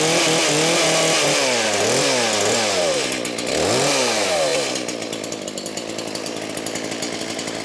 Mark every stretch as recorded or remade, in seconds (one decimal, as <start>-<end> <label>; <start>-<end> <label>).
0.0-7.6 recorded